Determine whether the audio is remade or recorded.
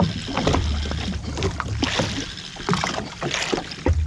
recorded